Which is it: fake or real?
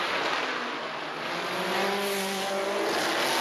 real